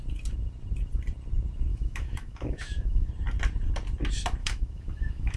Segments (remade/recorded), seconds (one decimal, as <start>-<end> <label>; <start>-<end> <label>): 0.0-1.7 recorded; 1.7-3.1 remade; 3.1-4.4 recorded; 4.4-5.4 remade